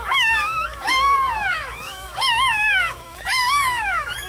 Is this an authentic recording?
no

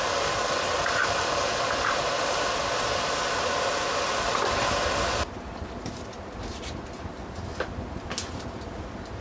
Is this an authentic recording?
yes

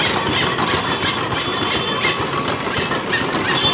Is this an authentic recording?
yes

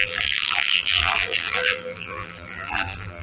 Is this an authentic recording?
no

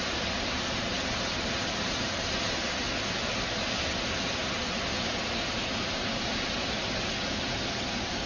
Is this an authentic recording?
yes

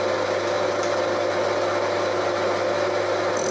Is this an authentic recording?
yes